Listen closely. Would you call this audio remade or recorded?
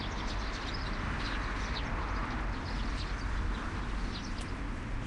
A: recorded